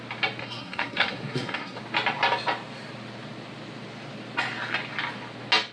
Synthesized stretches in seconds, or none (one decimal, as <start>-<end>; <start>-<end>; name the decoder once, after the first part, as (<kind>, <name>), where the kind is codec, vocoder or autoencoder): 0.4-1.8 (codec, SNAC)